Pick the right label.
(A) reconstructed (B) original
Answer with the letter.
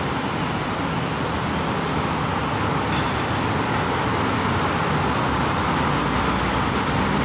B